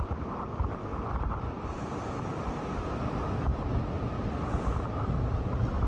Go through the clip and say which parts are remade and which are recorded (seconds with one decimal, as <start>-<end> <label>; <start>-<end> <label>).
0.0-5.9 recorded